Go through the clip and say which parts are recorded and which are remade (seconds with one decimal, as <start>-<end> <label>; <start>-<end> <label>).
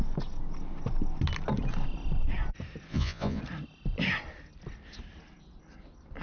0.0-2.9 recorded; 2.9-3.4 remade; 3.4-6.2 recorded